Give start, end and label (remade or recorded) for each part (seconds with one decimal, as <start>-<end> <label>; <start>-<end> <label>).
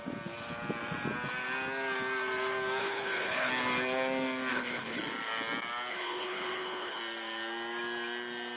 0.0-2.8 recorded; 2.8-3.5 remade; 3.5-4.5 recorded; 4.5-5.0 remade; 5.0-5.9 recorded; 5.9-7.0 remade; 7.0-8.6 recorded